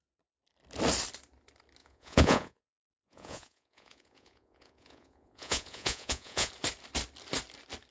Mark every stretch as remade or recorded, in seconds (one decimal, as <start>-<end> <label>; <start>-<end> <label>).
0.0-1.8 recorded; 1.8-6.5 remade; 6.5-7.9 recorded